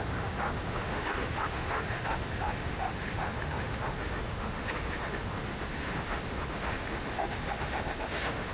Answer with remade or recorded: remade